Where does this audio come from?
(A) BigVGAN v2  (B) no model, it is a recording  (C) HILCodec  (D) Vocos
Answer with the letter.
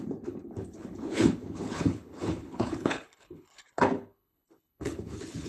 C